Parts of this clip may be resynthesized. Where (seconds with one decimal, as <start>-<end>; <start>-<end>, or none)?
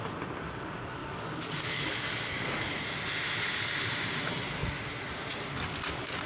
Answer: 1.0-2.7